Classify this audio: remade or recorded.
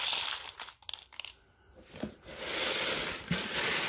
recorded